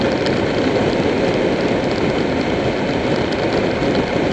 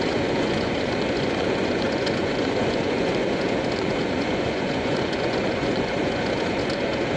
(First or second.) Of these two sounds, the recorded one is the first